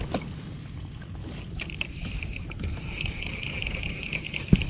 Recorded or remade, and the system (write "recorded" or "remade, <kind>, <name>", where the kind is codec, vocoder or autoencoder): recorded